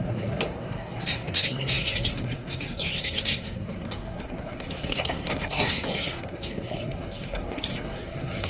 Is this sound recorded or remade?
remade